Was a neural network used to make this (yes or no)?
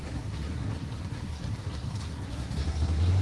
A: yes